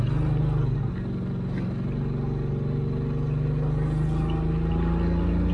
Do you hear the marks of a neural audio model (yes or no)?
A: no